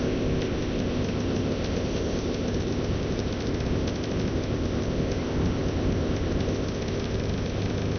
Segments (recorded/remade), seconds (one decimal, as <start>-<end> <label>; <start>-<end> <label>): 0.0-8.0 remade

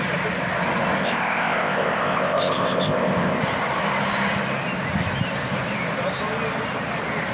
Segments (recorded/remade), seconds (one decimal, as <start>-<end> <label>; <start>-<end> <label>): 0.0-1.0 recorded; 1.0-3.4 remade; 3.4-7.3 recorded

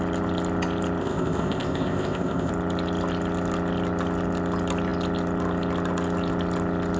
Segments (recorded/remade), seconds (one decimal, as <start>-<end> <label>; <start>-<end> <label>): 0.0-1.0 recorded; 1.0-2.5 remade; 2.5-7.0 recorded

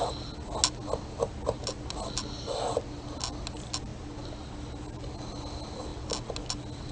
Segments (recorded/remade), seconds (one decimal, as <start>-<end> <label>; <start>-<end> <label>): 0.0-6.9 recorded

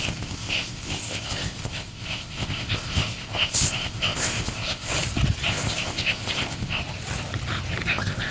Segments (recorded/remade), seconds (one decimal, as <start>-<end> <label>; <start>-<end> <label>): 0.0-4.9 remade; 4.9-5.5 recorded; 5.5-6.8 remade; 6.8-7.9 recorded; 7.9-8.3 remade

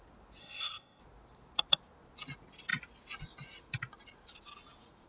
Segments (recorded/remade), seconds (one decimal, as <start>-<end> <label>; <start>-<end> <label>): 0.0-0.4 recorded; 0.4-1.0 remade; 1.0-5.1 recorded

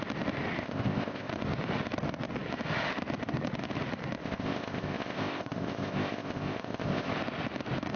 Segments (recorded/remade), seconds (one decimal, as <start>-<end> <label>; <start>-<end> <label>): 0.0-0.6 recorded; 0.6-1.3 remade; 1.3-4.2 recorded; 4.2-7.1 remade; 7.1-8.0 recorded